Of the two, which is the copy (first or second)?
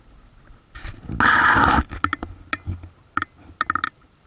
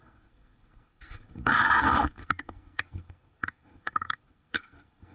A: second